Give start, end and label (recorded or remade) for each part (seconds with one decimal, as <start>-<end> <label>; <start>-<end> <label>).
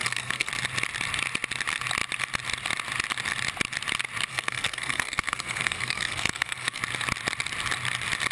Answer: 0.0-0.5 remade; 0.5-4.3 recorded; 4.3-6.8 remade; 6.8-8.3 recorded